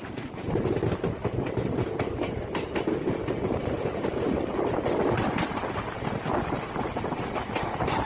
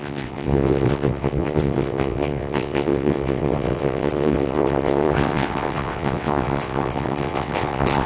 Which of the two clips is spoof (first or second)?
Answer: second